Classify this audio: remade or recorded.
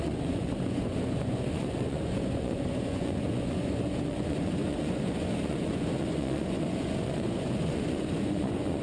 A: remade